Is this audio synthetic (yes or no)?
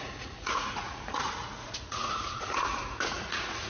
yes